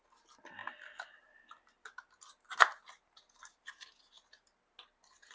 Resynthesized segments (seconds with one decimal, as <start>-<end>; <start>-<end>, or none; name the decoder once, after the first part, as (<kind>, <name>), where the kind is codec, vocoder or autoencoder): none